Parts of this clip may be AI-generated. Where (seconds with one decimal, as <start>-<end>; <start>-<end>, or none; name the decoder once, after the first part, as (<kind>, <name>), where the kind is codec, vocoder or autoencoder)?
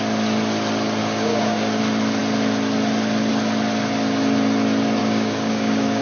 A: 1.0-1.8 (codec, DAC); 5.0-6.0